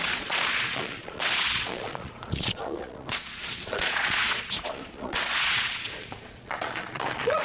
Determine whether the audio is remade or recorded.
remade